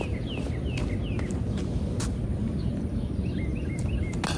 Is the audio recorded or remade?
recorded